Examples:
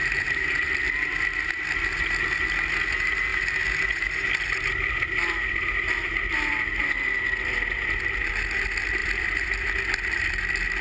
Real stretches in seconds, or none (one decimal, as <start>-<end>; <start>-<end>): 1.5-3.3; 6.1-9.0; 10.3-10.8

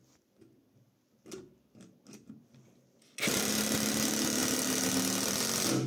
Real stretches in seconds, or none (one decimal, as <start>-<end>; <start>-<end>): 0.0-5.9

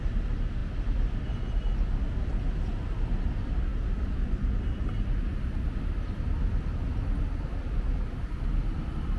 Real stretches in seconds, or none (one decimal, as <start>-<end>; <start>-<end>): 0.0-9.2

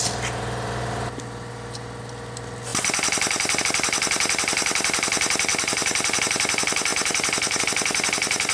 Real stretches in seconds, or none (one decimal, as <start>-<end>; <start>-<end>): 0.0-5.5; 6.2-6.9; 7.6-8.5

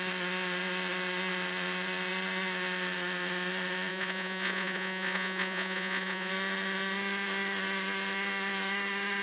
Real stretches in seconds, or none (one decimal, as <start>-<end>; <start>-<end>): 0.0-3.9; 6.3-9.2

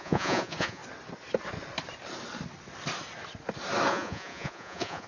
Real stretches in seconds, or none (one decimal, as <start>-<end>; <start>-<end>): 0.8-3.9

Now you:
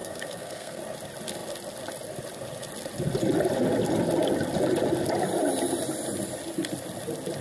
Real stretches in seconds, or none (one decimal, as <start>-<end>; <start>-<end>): 0.8-7.4